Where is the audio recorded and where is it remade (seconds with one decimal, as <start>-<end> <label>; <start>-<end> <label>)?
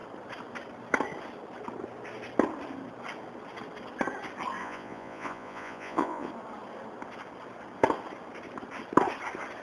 0.0-4.6 recorded; 4.6-6.3 remade; 6.3-9.6 recorded